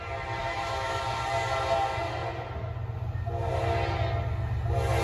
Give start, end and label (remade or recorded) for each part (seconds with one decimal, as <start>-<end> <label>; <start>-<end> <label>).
0.0-0.4 recorded; 0.4-1.0 remade; 1.0-5.0 recorded

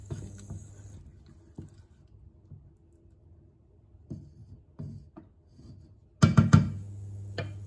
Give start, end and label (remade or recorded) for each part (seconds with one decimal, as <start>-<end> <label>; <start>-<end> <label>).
0.0-0.7 remade; 0.7-7.7 recorded

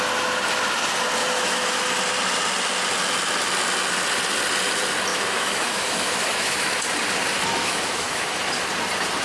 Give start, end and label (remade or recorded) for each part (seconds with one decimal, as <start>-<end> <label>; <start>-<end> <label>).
0.0-1.2 recorded; 1.2-1.8 remade; 1.8-5.1 recorded; 5.1-6.8 remade; 6.8-7.6 recorded; 7.6-8.4 remade; 8.4-9.2 recorded

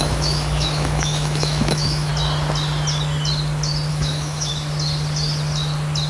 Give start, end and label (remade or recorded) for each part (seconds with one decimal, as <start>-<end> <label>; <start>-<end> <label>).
0.0-2.1 remade; 2.1-3.9 recorded; 3.9-4.5 remade; 4.5-6.1 recorded